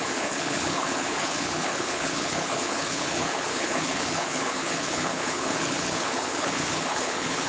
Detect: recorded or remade remade